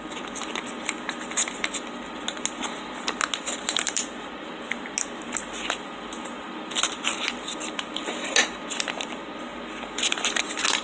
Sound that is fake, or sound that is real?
real